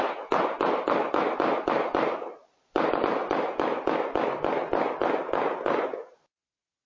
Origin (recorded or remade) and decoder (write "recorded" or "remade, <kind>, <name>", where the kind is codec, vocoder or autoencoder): recorded